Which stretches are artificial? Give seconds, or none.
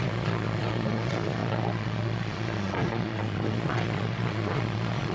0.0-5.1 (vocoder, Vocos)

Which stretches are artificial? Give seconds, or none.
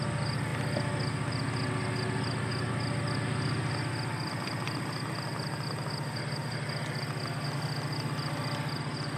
none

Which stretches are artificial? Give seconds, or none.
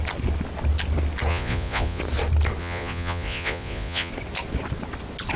1.3-2.0 (vocoder, Vocos); 2.6-4.1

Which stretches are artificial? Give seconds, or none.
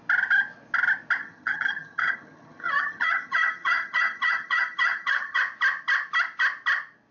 1.2-5.4 (vocoder, HiFi-GAN)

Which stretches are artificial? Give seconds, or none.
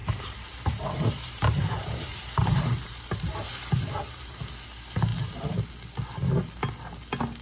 0.0-4.4 (vocoder, BigVGAN v2)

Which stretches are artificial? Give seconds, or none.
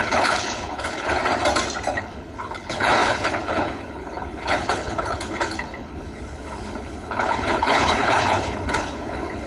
0.0-1.2 (codec, HILCodec); 1.9-9.5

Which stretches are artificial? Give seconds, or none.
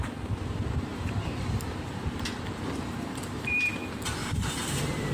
0.9-3.7 (vocoder, BigVGAN v2); 4.2-5.1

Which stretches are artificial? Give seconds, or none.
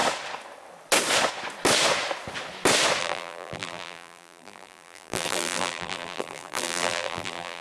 3.0-7.6 (vocoder, BigVGAN v2)